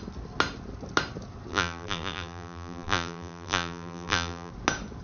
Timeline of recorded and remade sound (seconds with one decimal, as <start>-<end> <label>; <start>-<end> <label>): 0.0-1.5 recorded; 1.5-4.5 remade; 4.5-5.0 recorded